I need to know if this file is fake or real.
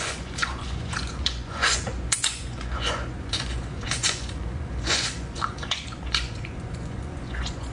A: fake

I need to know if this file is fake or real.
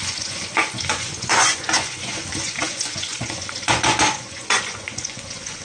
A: fake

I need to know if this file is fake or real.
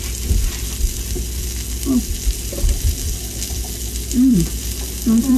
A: real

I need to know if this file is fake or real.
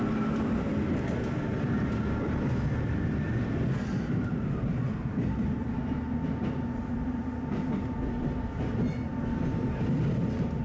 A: real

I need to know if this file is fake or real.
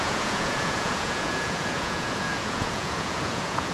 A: fake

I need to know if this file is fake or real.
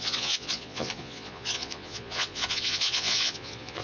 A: fake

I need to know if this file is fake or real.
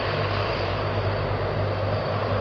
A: real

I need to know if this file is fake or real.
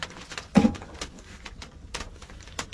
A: fake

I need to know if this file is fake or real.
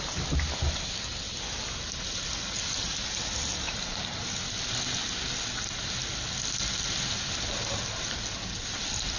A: real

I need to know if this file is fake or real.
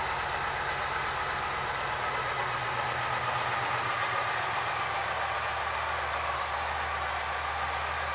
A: real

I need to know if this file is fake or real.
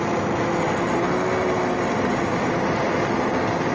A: real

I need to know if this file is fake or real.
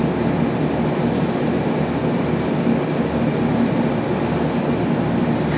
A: real